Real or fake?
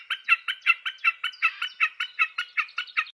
real